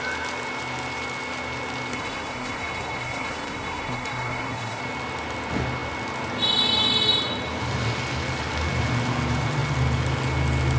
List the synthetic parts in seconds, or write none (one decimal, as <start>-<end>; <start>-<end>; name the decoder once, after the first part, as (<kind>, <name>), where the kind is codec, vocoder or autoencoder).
1.9-4.8 (codec, SNAC)